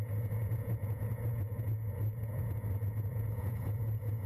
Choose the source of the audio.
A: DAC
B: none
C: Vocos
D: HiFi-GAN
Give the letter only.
C